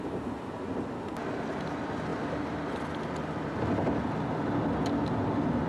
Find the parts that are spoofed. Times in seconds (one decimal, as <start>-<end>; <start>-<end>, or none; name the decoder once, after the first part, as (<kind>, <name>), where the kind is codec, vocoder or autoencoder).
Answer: none